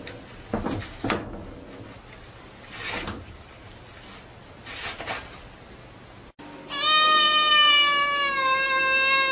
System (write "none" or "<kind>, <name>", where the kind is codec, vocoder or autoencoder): none